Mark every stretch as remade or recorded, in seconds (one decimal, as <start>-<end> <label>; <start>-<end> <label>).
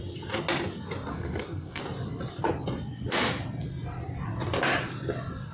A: 0.0-1.1 recorded; 1.1-1.8 remade; 1.8-5.5 recorded